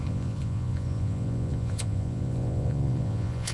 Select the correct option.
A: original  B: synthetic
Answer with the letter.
B